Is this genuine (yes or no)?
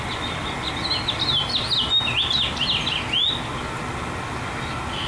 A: yes